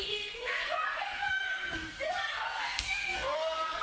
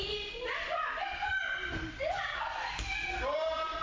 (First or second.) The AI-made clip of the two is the first